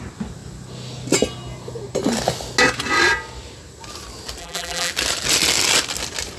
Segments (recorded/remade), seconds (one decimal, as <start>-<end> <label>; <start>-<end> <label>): 0.0-4.4 recorded; 4.4-4.9 remade; 4.9-6.4 recorded